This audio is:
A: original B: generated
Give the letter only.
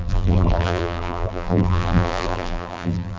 B